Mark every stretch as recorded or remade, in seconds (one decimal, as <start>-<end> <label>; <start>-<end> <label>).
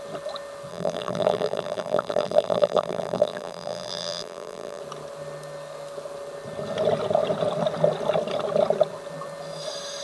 0.0-0.7 recorded; 0.7-4.8 remade; 4.8-10.0 recorded